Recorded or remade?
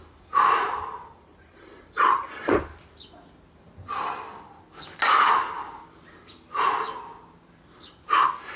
recorded